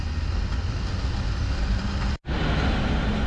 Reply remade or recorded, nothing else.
recorded